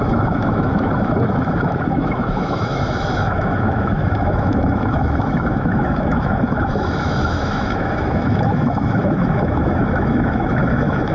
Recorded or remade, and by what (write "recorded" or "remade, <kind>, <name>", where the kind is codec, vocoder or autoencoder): remade, autoencoder, DAC-VAE